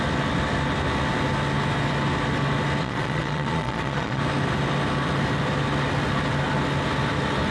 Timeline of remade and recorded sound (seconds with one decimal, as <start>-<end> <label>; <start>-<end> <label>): 0.0-2.8 recorded; 2.8-4.2 remade; 4.2-7.5 recorded